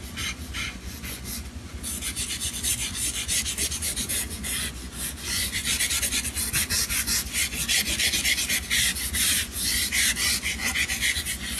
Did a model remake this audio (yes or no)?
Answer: yes